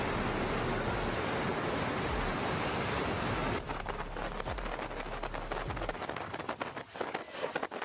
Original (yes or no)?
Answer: yes